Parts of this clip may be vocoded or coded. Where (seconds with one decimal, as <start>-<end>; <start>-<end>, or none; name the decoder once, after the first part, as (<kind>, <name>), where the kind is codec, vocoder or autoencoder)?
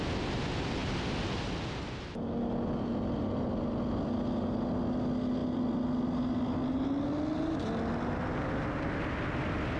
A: none